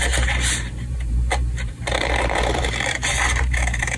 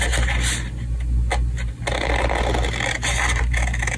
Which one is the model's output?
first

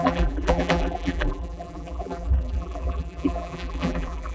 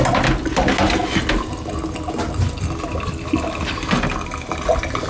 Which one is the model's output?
first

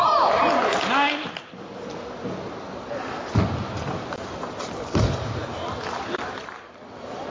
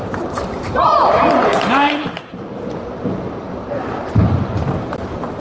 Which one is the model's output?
second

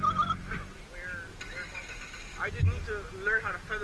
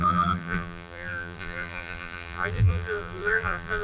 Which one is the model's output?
second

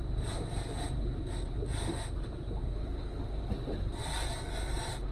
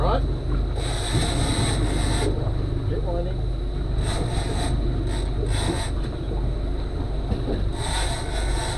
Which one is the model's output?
first